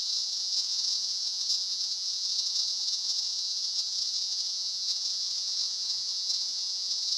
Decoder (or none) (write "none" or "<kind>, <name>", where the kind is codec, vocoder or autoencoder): vocoder, Vocos